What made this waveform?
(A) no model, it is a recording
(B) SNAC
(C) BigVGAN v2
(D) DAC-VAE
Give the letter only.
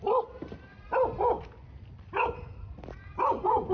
A